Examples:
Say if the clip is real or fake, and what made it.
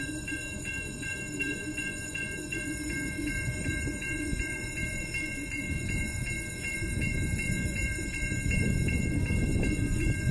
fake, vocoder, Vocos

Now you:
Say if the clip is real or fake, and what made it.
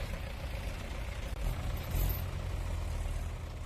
real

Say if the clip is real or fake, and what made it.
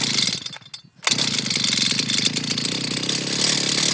real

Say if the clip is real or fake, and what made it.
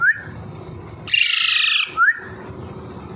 real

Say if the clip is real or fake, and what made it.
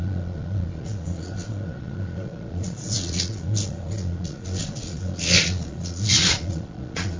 fake, vocoder, Vocos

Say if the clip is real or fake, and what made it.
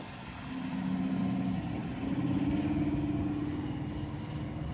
real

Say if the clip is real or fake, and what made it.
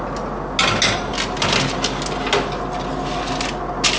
real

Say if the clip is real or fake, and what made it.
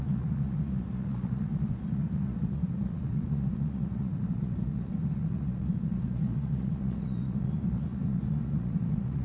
fake, vocoder, Vocos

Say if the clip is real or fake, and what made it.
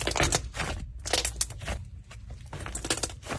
real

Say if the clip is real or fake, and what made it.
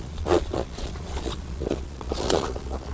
fake, vocoder, Vocos